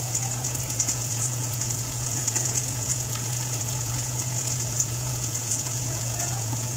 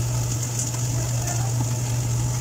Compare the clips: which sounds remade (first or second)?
first